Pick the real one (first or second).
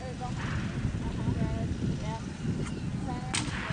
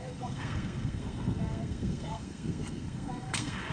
first